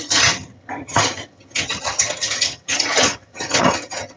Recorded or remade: remade